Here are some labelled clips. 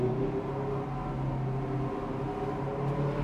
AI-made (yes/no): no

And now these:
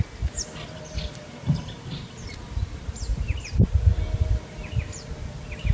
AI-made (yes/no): no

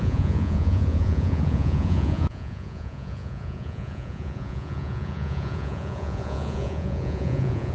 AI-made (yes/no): yes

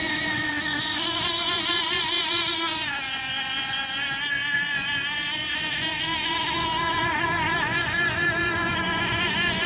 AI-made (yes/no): yes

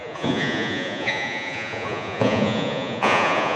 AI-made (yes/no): yes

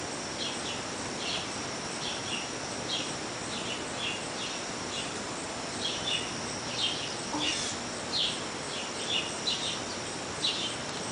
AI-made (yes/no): no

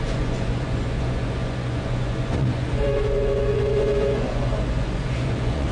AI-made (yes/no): yes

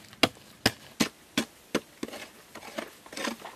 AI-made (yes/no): no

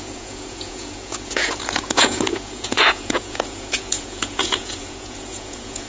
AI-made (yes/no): yes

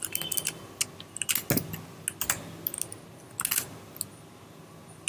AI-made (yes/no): no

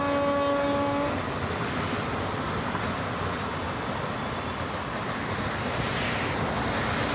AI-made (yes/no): no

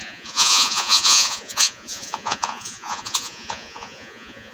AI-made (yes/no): yes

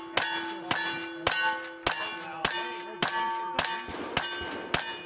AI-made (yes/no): no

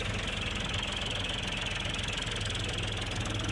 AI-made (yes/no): no